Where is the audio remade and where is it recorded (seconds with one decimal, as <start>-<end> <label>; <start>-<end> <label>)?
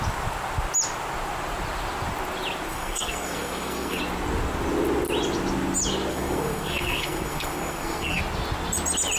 0.0-2.7 recorded; 2.7-4.0 remade; 4.0-6.1 recorded; 6.1-8.2 remade; 8.2-9.2 recorded